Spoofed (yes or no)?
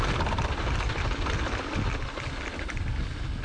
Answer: no